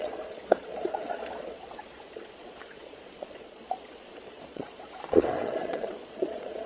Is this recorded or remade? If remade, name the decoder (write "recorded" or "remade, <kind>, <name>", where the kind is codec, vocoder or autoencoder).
remade, vocoder, Vocos